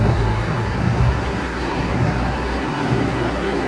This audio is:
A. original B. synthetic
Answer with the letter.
B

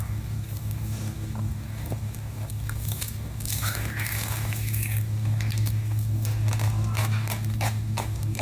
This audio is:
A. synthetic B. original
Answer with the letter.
A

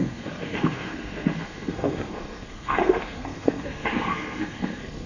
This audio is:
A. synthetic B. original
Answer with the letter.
A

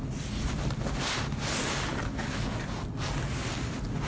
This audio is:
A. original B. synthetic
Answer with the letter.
A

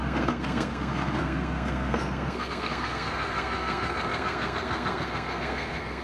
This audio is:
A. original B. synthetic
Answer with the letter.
B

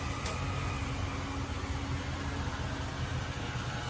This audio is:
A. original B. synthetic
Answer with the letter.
A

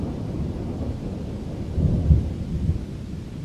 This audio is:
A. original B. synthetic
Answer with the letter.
B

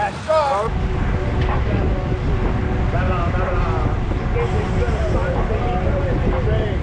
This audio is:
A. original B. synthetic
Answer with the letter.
A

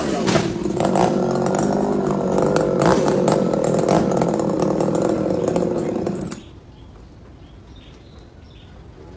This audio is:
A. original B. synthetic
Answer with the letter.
A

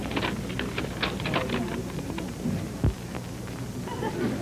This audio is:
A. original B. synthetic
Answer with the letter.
A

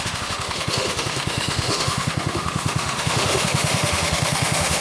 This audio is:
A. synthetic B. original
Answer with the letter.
A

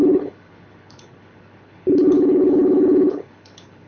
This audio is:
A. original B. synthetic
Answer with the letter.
B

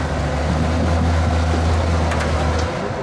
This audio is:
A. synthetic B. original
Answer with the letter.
B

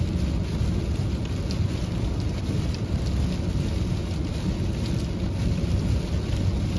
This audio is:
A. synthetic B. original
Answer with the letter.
B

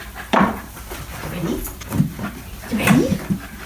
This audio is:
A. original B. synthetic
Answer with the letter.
B